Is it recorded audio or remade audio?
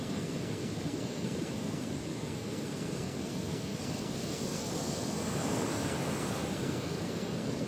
remade